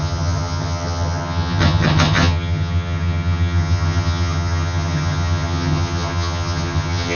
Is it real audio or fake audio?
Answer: fake